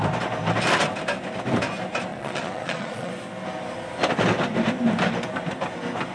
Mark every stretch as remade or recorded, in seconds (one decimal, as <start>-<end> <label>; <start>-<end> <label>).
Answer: 0.0-2.1 recorded; 2.1-3.1 remade; 3.1-6.1 recorded